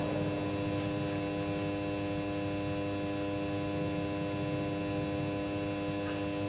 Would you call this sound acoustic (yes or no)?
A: yes